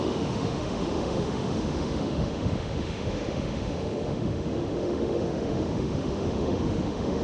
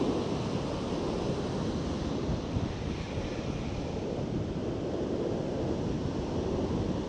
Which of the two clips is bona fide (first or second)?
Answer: second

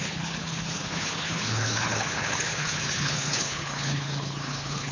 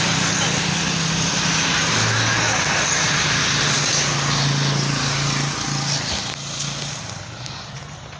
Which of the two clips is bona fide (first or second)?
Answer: second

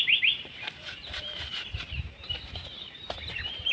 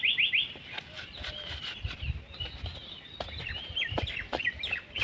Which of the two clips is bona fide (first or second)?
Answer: second